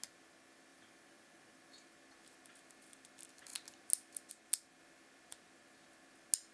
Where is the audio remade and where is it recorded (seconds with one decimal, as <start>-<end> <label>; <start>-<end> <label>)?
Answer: 0.0-0.7 recorded; 0.7-1.7 remade; 1.7-6.5 recorded